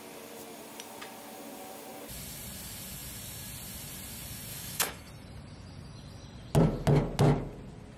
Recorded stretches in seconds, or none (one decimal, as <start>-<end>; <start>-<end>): 0.0-4.5; 5.1-8.0